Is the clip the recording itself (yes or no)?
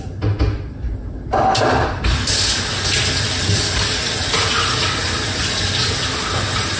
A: yes